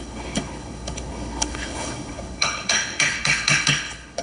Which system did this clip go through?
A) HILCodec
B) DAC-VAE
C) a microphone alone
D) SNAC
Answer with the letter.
A